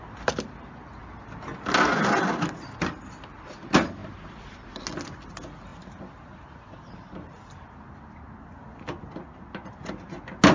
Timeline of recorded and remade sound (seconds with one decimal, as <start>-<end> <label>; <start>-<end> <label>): 0.0-4.0 recorded; 4.0-4.8 remade; 4.8-10.5 recorded